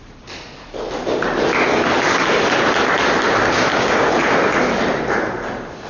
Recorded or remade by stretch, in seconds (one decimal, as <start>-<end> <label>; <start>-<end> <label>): 0.0-3.7 recorded; 3.7-4.2 remade; 4.2-5.9 recorded